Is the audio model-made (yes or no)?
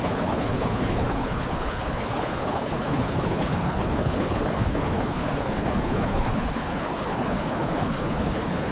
yes